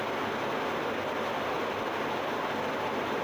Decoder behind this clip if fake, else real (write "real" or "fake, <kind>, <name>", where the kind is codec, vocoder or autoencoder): real